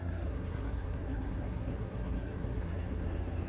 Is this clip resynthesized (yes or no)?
yes